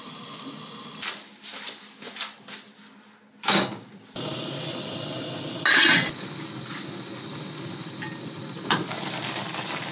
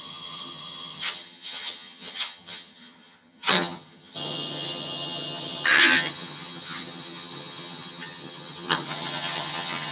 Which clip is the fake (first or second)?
second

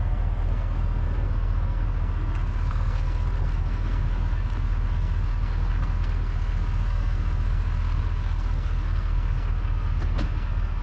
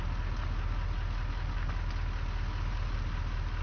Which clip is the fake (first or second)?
first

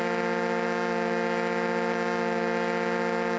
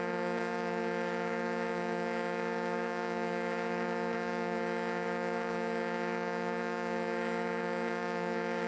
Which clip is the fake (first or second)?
second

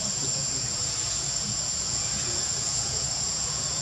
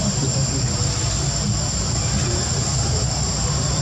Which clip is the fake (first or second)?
first